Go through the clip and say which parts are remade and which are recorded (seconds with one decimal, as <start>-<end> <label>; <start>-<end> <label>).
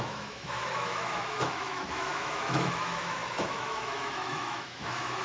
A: 0.0-5.2 remade